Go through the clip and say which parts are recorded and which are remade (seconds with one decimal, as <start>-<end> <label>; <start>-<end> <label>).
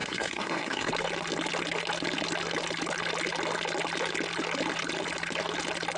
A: 0.0-0.9 remade; 0.9-6.0 recorded